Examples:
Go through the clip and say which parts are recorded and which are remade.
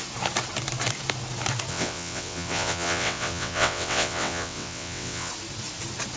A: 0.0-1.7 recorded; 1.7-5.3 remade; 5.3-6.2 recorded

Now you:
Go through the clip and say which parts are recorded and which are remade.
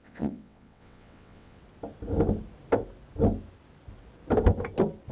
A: 0.0-1.6 remade; 1.6-5.1 recorded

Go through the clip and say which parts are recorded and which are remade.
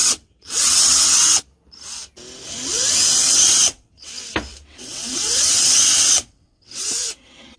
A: 0.0-1.4 remade; 1.4-3.2 recorded; 3.2-4.1 remade; 4.1-4.5 recorded; 4.5-7.6 remade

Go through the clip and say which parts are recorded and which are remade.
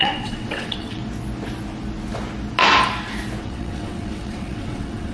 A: 0.0-1.0 remade; 1.0-3.4 recorded; 3.4-5.1 remade